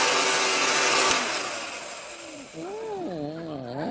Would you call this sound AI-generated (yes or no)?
no